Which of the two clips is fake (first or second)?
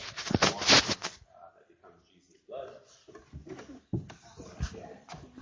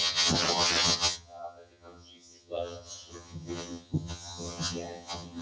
second